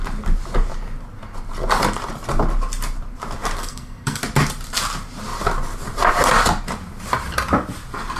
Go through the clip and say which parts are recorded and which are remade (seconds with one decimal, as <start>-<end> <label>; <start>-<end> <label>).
0.0-3.6 recorded; 3.6-4.2 remade; 4.2-8.2 recorded